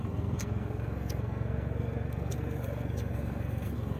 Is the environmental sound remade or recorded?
remade